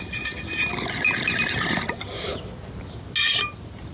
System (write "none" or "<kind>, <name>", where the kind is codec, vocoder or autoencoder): none